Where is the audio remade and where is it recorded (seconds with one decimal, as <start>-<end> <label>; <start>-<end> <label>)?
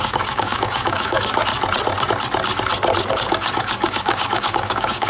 0.0-1.5 remade; 1.5-3.1 recorded; 3.1-5.1 remade